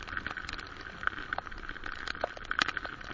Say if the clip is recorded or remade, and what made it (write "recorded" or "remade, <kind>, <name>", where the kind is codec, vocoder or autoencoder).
recorded